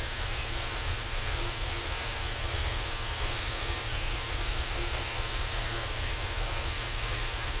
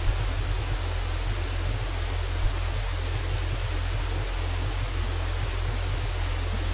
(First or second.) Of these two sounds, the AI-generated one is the first